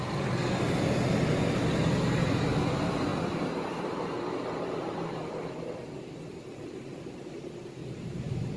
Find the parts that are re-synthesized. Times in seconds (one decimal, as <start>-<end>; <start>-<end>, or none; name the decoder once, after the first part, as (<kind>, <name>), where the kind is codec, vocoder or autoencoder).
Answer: 7.8-8.6 (vocoder, BigVGAN v2)